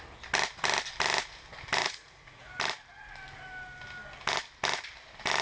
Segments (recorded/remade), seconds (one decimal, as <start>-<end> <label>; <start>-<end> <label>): 0.0-1.8 recorded; 1.8-2.5 remade; 2.5-5.4 recorded